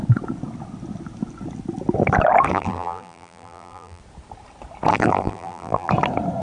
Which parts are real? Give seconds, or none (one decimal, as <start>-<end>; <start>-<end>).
0.0-2.5; 4.0-4.9; 5.9-6.4